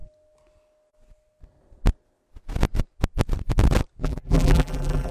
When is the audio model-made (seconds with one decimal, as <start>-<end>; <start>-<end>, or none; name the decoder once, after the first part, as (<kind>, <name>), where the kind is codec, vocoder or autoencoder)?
4.0-5.1 (vocoder, BigVGAN v2)